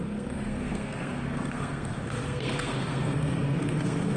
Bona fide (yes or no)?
no